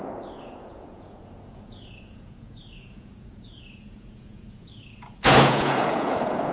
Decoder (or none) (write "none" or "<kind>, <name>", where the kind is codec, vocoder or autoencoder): vocoder, Vocos